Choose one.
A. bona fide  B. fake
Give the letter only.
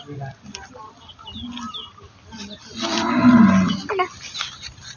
A